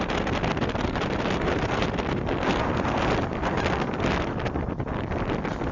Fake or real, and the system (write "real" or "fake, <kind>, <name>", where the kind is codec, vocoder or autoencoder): real